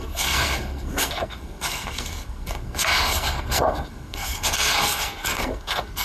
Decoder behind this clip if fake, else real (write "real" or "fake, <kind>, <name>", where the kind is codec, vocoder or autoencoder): fake, codec, SNAC